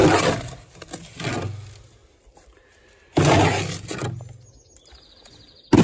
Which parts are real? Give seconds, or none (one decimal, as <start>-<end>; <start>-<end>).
1.0-5.8